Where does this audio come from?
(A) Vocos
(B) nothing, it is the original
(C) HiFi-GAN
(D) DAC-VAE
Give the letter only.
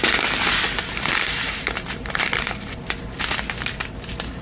B